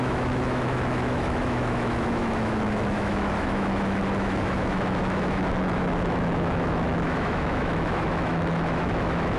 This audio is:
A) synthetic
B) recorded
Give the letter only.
A